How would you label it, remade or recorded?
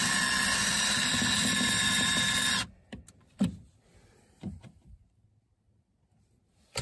recorded